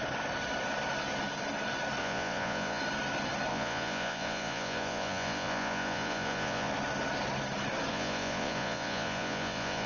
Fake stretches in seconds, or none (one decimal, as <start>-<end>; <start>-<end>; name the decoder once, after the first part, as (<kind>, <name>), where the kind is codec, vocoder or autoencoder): 2.0-2.8 (vocoder, Vocos); 3.5-6.7; 7.9-9.9